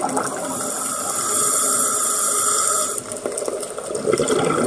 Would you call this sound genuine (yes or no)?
yes